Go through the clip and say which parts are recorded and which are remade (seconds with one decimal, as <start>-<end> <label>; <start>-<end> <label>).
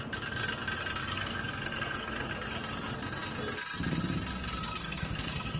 0.0-1.0 recorded; 1.0-2.3 remade; 2.3-4.6 recorded; 4.6-5.6 remade